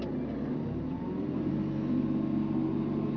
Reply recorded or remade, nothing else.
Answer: recorded